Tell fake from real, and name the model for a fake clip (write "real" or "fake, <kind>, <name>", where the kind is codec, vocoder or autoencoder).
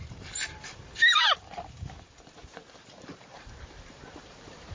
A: fake, vocoder, BigVGAN v2